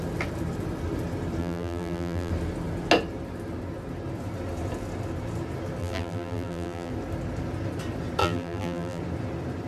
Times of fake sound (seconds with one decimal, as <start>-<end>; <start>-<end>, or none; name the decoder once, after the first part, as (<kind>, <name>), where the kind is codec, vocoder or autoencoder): 1.4-2.3 (vocoder, BigVGAN v2); 5.8-6.9; 8.2-9.0